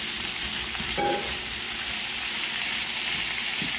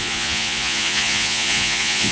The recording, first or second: first